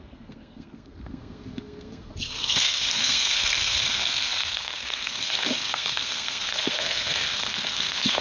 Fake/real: fake